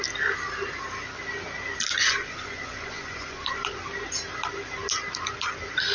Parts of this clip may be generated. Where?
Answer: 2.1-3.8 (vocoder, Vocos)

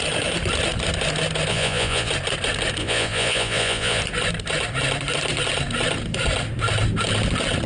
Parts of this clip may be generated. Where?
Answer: 1.5-2.1 (vocoder, Vocos); 2.8-4.0

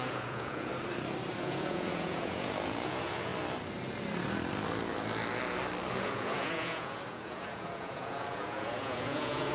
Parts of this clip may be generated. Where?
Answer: 0.0-0.7 (vocoder, Vocos); 1.4-3.3; 5.9-9.5

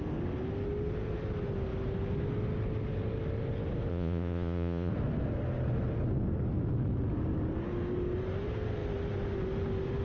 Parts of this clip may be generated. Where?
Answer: 3.9-4.9 (vocoder, Vocos)

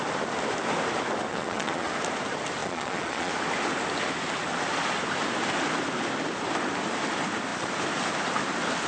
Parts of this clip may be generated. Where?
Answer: 1.3-1.9 (vocoder, Vocos); 2.6-3.3

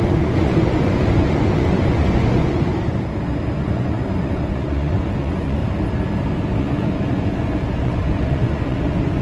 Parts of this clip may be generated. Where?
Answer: 0.0-2.7 (vocoder, Vocos); 3.6-5.6; 6.6-9.2

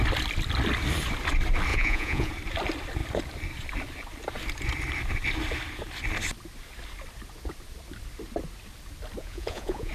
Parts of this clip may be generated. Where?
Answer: 1.7-2.3 (vocoder, Vocos); 9.2-9.9